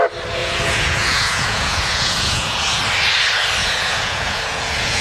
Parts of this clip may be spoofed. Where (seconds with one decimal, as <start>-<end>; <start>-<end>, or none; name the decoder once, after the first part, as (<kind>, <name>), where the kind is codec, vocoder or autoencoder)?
0.4-2.8 (vocoder, Vocos); 3.6-5.0